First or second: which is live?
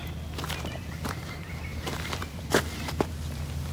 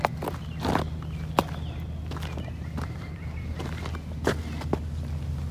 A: second